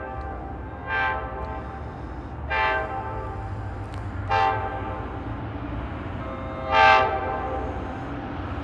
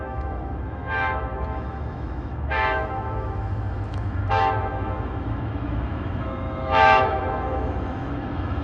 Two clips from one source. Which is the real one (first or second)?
first